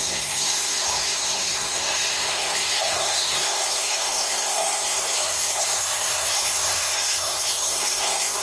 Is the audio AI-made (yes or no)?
yes